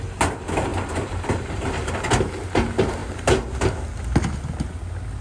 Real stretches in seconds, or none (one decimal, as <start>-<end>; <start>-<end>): 0.0-0.7; 1.9-5.2